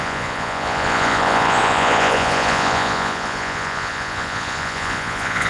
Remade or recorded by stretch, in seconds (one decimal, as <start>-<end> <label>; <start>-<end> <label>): 0.0-5.5 remade